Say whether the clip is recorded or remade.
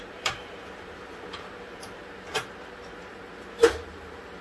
remade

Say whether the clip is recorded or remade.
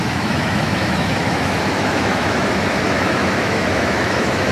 remade